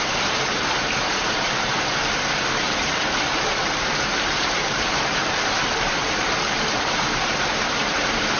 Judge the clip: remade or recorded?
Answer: remade